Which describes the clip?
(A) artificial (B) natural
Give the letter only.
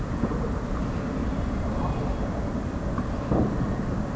B